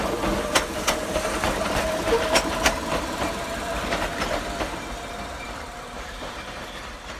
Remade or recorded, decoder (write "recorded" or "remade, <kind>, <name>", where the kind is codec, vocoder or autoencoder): remade, vocoder, BigVGAN v2